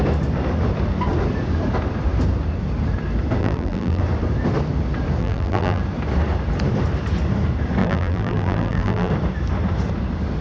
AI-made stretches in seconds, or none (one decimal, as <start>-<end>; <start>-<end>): 3.4-4.0; 5.2-5.8; 7.8-9.1